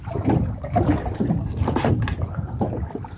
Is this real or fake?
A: real